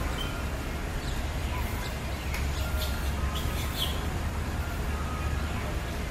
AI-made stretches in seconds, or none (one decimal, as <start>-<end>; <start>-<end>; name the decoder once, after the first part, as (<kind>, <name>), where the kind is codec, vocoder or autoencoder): 0.9-2.5 (vocoder, BigVGAN v2); 3.9-4.4